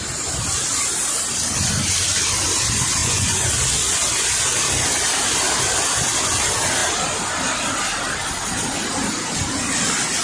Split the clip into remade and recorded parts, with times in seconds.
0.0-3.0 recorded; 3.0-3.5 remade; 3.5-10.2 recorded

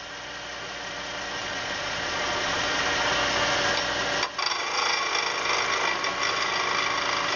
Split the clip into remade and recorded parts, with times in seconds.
0.0-1.4 recorded; 1.4-2.8 remade; 2.8-4.5 recorded; 4.5-5.1 remade; 5.1-7.4 recorded

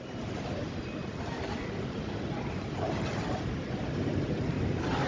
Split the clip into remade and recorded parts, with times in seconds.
0.0-5.1 recorded

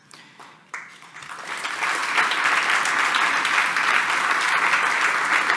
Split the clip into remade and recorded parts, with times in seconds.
0.0-5.6 recorded